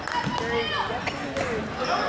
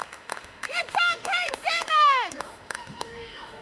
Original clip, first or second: first